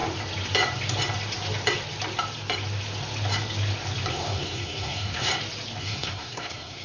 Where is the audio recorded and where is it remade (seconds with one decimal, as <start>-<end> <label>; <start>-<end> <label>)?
0.0-4.1 recorded; 4.1-5.3 remade; 5.3-5.8 recorded; 5.8-6.8 remade